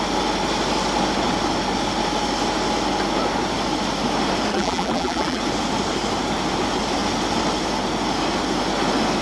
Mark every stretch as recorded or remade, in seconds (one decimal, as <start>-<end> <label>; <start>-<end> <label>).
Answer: 0.0-4.5 recorded; 4.5-5.4 remade; 5.4-9.2 recorded